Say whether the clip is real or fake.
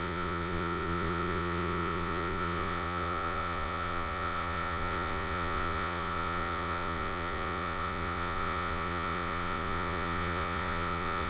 fake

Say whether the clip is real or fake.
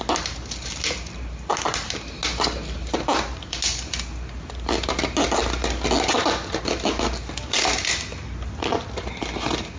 real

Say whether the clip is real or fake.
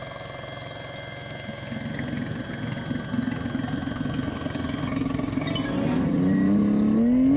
real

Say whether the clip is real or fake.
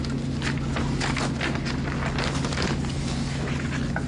real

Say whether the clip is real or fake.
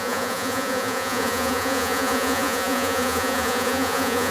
fake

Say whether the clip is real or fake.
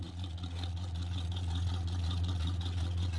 fake